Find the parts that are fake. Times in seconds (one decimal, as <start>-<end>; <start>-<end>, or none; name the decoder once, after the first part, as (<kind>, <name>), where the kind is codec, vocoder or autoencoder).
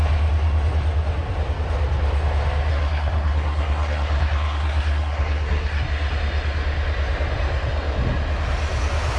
2.7-5.8 (codec, SNAC)